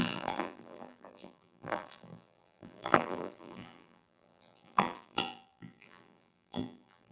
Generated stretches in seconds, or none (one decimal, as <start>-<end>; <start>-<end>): 0.0-7.1